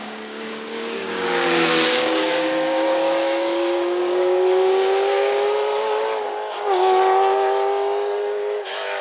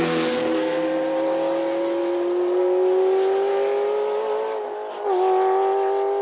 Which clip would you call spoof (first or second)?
first